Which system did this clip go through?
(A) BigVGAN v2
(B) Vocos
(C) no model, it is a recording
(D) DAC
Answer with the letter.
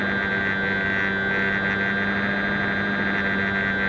C